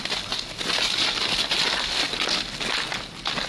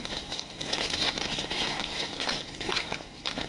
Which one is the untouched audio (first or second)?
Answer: first